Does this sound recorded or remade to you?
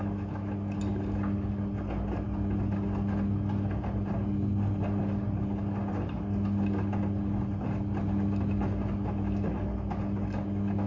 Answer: recorded